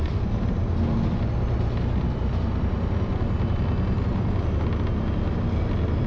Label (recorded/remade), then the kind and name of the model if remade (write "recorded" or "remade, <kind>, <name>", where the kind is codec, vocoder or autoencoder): recorded